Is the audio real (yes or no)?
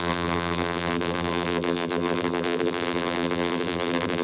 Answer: no